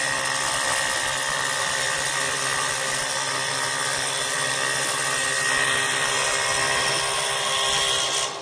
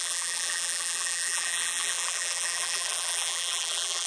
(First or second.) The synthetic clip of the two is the second